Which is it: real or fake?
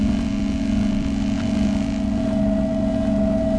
real